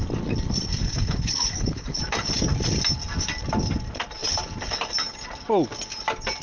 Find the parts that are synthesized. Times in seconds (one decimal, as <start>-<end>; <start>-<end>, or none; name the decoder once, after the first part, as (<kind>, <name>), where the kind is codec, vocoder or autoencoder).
0.7-2.0 (codec, HILCodec)